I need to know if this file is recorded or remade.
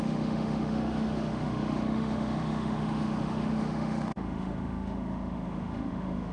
remade